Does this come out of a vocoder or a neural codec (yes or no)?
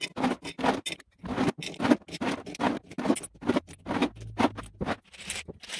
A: no